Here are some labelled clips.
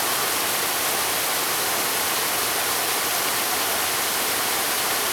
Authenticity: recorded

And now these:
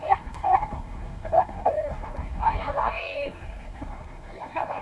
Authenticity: remade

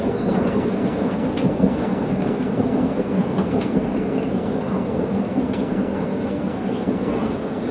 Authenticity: remade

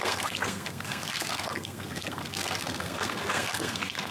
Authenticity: remade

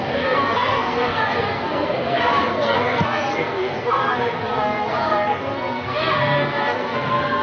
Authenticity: remade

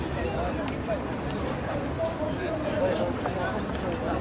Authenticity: recorded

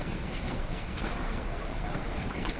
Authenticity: remade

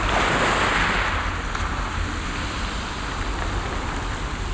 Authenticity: recorded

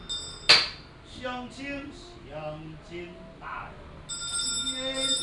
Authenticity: recorded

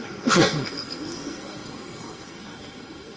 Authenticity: remade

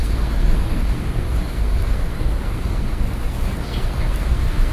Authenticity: remade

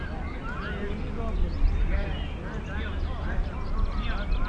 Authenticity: recorded